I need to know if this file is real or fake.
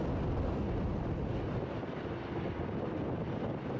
real